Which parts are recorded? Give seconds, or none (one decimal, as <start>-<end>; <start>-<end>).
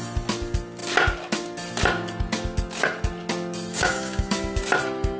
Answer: 0.0-3.7; 4.6-5.2